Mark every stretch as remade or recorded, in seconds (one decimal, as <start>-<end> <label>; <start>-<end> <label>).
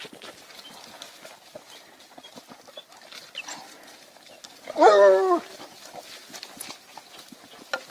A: 0.0-7.9 recorded